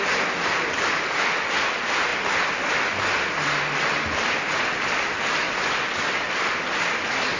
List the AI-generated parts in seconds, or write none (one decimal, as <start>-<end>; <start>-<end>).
none